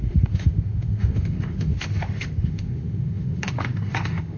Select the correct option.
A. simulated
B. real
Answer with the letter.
A